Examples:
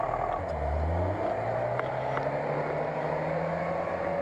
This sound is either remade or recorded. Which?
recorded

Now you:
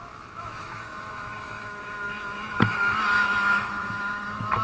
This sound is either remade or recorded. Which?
remade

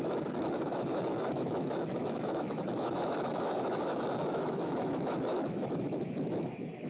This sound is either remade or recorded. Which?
remade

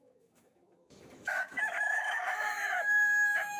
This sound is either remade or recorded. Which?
remade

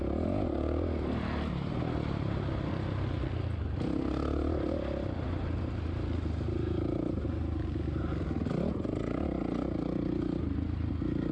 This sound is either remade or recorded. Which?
recorded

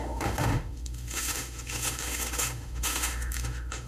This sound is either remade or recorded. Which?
remade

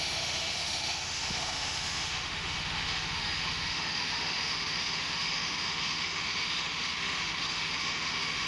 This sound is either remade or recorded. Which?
remade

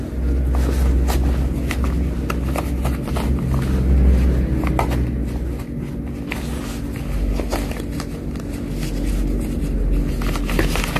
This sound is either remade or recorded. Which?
recorded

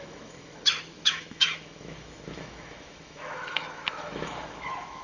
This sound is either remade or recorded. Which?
remade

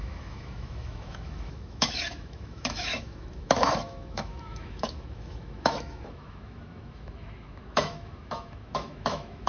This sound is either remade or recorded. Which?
remade